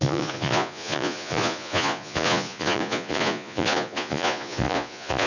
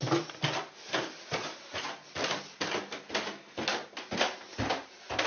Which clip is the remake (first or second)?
first